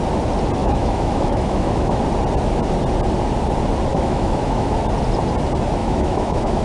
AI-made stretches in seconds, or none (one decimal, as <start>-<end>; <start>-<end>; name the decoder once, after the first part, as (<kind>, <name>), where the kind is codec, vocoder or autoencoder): 0.6-2.0 (autoencoder, DAC-VAE); 3.9-4.8; 5.8-6.6